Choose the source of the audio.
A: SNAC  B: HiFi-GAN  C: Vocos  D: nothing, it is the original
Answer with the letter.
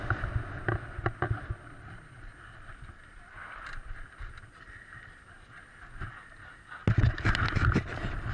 D